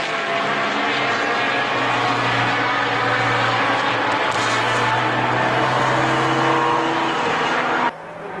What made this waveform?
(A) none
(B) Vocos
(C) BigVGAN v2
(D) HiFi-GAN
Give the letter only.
A